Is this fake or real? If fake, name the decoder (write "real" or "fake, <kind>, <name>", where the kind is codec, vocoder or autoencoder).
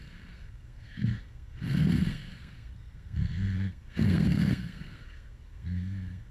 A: fake, codec, SNAC